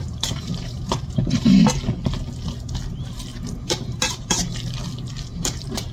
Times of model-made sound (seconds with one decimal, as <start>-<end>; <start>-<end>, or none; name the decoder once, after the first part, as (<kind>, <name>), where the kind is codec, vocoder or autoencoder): 0.0-1.6 (vocoder, BigVGAN v2); 2.9-4.8; 5.3-5.9